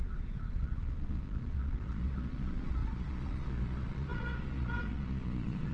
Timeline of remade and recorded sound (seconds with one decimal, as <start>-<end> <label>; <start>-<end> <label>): 0.0-5.7 remade